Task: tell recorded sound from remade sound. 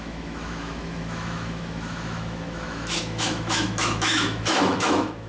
remade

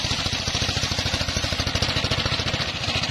recorded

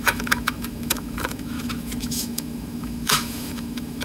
remade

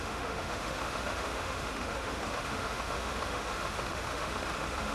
remade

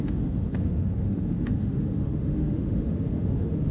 remade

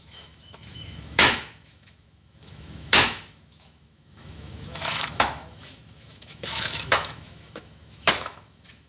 remade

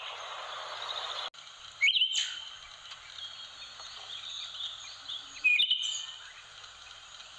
recorded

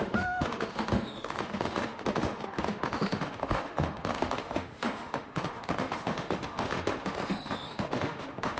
remade